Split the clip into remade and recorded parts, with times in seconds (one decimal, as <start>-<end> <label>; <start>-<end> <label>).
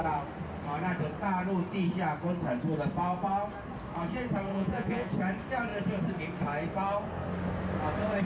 0.0-4.5 recorded; 4.5-5.1 remade; 5.1-8.2 recorded